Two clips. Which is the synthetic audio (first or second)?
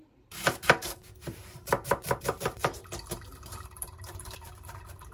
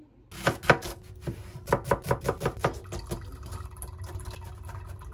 first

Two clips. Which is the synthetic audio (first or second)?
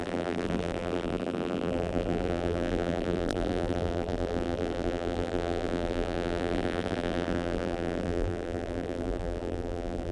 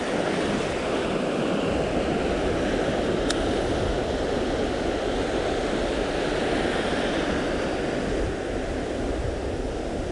first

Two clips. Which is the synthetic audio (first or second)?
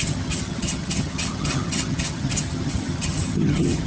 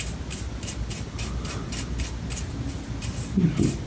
first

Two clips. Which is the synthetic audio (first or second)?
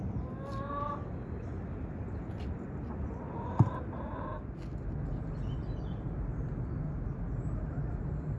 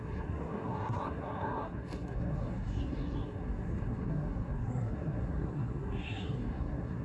second